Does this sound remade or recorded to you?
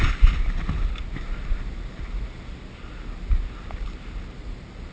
recorded